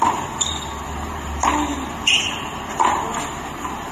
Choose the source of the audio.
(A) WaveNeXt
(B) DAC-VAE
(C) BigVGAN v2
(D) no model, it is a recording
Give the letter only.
D